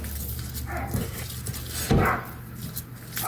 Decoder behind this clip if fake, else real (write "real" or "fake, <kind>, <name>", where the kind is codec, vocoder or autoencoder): real